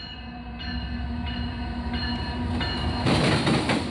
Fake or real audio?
real